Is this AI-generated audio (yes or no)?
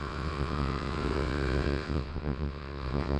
yes